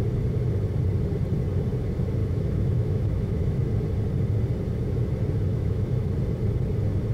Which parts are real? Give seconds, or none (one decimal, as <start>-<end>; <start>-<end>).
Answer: 0.0-2.2; 3.6-5.5; 6.1-7.1